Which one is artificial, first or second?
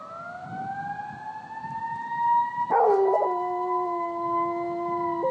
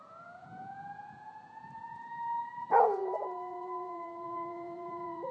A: second